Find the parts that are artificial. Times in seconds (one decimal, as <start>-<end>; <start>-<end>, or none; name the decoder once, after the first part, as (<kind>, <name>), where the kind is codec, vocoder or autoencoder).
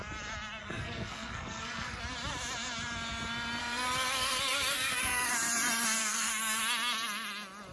0.6-2.0 (codec, SNAC); 3.6-5.3; 6.0-6.6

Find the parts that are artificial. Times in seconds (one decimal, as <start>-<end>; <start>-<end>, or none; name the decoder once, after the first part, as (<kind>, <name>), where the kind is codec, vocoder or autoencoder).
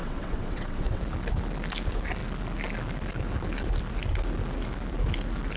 0.0-1.0 (vocoder, WaveNeXt)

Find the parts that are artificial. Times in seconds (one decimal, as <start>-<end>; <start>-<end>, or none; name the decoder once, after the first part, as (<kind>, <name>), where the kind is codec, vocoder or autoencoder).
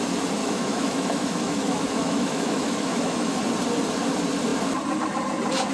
0.4-3.4 (autoencoder, DAC-VAE)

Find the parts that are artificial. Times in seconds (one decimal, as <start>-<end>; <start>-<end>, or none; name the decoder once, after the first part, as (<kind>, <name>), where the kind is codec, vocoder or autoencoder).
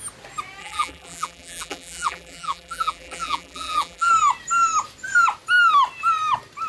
0.6-4.1 (vocoder, BigVGAN v2)